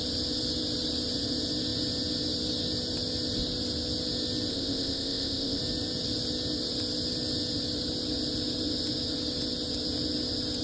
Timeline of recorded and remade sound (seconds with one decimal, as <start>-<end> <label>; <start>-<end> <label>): 0.0-4.5 recorded; 4.5-5.6 remade; 5.6-10.6 recorded